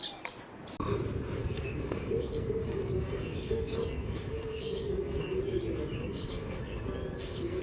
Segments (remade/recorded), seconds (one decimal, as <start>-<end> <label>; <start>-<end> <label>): 0.0-1.4 recorded; 1.4-5.4 remade; 5.4-6.0 recorded; 6.0-7.6 remade